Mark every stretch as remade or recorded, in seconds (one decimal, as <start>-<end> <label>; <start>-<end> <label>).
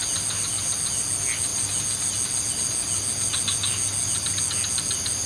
0.0-5.3 recorded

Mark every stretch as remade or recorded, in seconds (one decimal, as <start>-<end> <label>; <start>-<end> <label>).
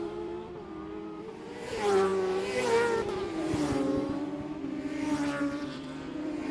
0.0-2.1 remade; 2.1-5.4 recorded; 5.4-6.5 remade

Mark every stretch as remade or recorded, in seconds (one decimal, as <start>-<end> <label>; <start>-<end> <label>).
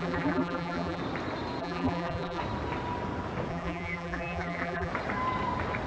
0.0-1.0 remade; 1.0-1.6 recorded; 1.6-2.4 remade; 2.4-3.5 recorded; 3.5-4.9 remade; 4.9-5.9 recorded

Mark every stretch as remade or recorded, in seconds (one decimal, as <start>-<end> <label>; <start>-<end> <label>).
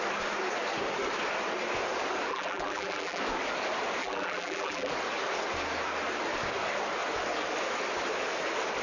0.0-2.3 recorded; 2.3-3.2 remade; 3.2-4.0 recorded; 4.0-4.9 remade; 4.9-8.8 recorded